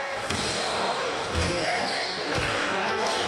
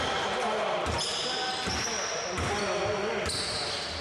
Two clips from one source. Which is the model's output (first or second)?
first